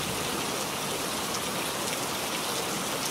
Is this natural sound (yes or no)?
yes